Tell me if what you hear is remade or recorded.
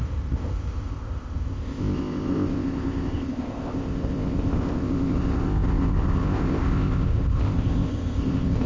remade